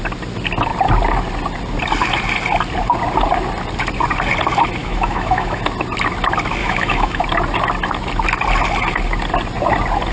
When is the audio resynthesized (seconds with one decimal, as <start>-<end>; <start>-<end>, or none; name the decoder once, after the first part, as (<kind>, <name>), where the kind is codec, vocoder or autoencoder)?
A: 4.8-5.6 (autoencoder, DAC-VAE); 6.6-7.2